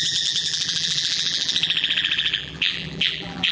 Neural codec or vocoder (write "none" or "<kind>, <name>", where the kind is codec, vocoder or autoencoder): vocoder, BigVGAN v2